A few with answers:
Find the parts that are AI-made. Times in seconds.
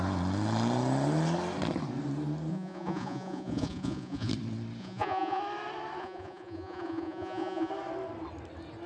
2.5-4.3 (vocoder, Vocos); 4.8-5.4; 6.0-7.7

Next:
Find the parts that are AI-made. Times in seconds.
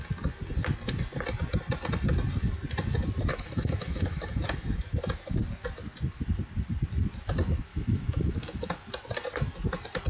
3.3-4.4 (autoencoder, DAC-VAE); 7.7-8.7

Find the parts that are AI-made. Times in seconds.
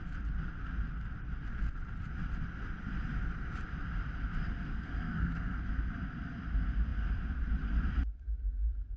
4.7-5.9 (codec, SNAC)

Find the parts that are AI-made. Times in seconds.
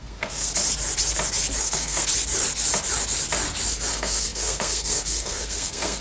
0.0-0.5 (codec, SNAC); 1.6-2.1; 3.9-6.0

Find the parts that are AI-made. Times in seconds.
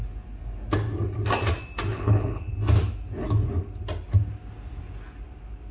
1.9-2.5 (codec, HILCodec)